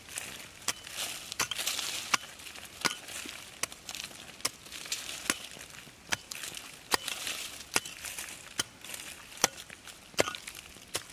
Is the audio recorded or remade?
recorded